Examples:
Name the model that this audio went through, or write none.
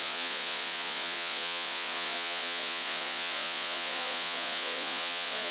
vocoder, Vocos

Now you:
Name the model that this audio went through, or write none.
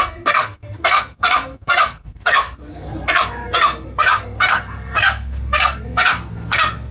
codec, SNAC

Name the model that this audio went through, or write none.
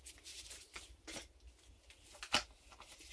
none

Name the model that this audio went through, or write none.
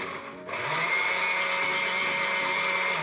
none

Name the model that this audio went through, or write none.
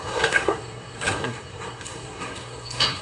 codec, SNAC